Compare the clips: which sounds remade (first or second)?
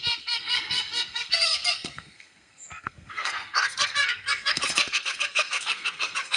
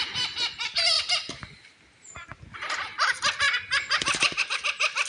first